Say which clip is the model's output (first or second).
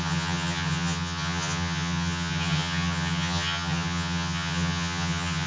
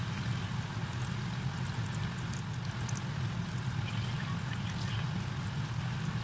first